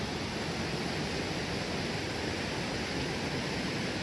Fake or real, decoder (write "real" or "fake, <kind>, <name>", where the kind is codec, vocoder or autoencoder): real